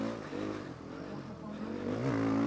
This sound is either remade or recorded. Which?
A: recorded